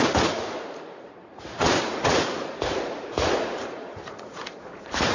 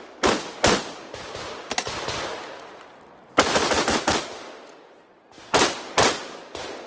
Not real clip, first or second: first